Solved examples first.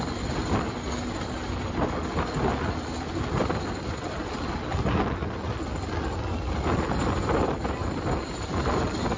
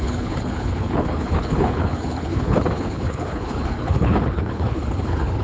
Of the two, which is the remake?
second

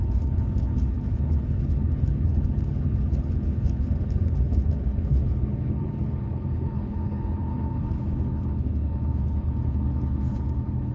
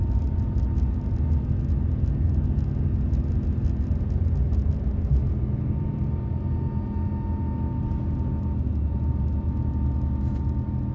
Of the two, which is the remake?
first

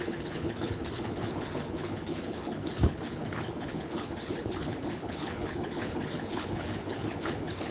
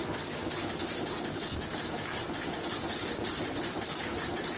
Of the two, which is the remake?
first